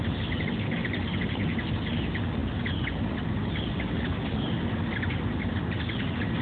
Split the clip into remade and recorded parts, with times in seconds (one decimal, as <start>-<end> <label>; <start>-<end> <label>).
0.0-6.4 recorded